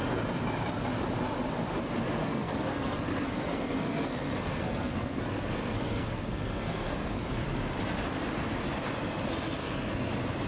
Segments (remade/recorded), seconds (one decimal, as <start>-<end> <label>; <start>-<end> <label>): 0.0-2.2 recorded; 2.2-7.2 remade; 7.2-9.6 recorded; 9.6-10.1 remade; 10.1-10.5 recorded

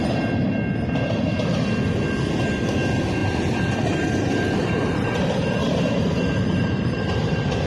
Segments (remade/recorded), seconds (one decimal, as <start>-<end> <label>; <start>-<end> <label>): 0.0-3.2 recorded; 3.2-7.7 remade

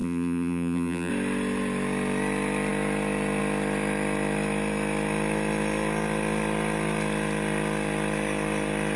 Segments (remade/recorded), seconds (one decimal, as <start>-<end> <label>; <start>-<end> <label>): 0.0-1.1 remade; 1.1-9.0 recorded

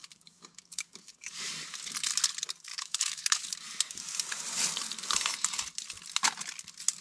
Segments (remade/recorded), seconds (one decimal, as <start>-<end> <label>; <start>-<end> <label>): 0.0-1.5 remade; 1.5-2.7 recorded; 2.7-3.4 remade; 3.4-7.0 recorded